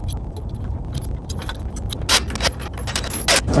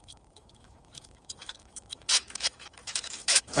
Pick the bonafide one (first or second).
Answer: first